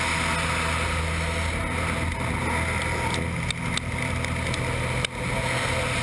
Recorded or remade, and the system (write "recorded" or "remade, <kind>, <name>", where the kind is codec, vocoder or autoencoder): recorded